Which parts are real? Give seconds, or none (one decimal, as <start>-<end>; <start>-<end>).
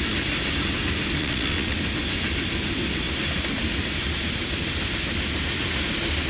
0.0-1.2; 1.8-6.3